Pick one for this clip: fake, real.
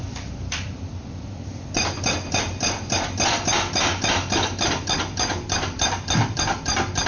fake